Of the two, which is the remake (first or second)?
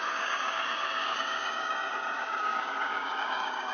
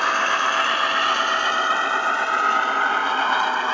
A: first